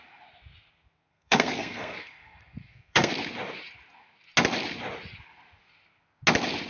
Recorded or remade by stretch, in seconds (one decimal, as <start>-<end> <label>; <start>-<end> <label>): 0.0-1.1 recorded; 1.1-3.1 remade; 3.1-6.7 recorded

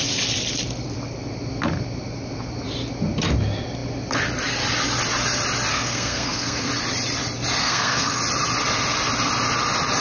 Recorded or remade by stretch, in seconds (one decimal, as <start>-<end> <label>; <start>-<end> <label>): 0.0-5.7 recorded; 5.7-6.7 remade; 6.7-7.6 recorded; 7.6-8.2 remade; 8.2-10.0 recorded

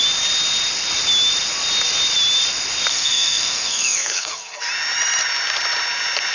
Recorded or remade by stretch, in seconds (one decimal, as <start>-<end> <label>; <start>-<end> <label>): 0.0-2.9 recorded; 2.9-4.6 remade; 4.6-6.3 recorded

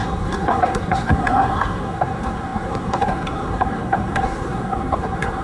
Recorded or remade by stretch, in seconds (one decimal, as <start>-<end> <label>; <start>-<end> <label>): 0.0-5.4 remade

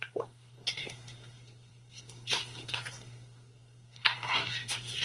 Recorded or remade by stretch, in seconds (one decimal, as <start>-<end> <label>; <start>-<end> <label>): 0.0-5.0 remade

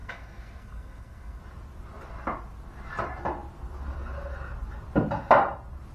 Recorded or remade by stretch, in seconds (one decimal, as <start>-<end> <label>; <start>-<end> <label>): 0.0-1.4 remade; 1.4-5.9 recorded

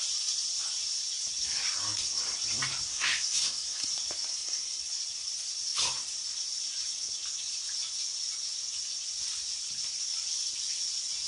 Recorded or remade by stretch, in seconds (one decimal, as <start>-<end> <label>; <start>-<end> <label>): 0.0-2.9 recorded; 2.9-3.9 remade; 3.9-4.3 recorded; 4.3-4.8 remade; 4.8-11.3 recorded

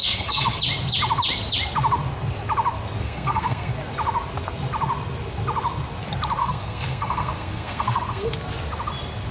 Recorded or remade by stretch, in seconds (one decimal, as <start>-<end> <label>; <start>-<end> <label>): 0.0-0.6 remade; 0.6-3.0 recorded; 3.0-3.7 remade; 3.7-6.4 recorded; 6.4-8.3 remade; 8.3-9.3 recorded